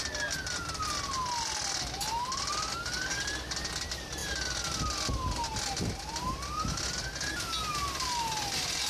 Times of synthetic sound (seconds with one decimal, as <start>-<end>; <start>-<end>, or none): none